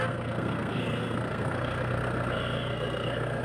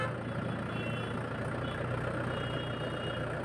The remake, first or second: first